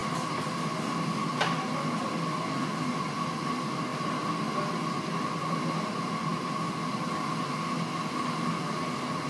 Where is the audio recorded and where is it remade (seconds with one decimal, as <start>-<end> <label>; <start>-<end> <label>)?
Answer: 0.0-9.3 recorded